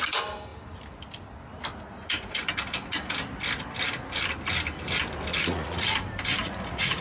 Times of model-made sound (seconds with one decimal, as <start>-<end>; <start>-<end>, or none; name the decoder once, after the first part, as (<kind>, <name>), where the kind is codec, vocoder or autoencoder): 5.3-6.0 (vocoder, Vocos); 6.4-7.0